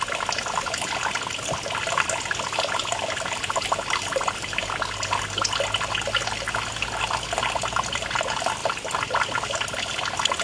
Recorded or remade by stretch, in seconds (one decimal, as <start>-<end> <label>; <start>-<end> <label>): 0.0-10.4 recorded